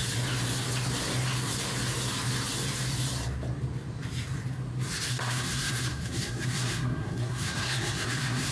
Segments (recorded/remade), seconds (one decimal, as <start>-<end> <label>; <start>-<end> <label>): 0.0-5.1 recorded; 5.1-8.5 remade